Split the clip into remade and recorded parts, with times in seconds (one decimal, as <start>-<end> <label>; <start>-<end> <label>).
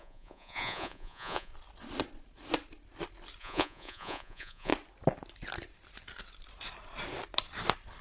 0.0-1.5 remade; 1.5-3.4 recorded; 3.4-4.7 remade; 4.7-8.0 recorded